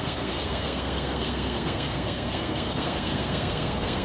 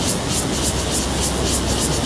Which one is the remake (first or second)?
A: first